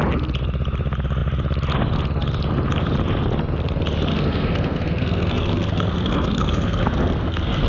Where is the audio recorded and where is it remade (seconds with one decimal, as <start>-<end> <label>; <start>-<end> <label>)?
0.0-4.1 recorded; 4.1-7.7 remade